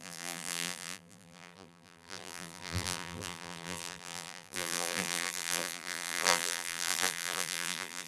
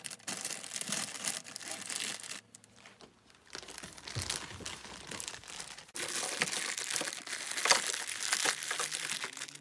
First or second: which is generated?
first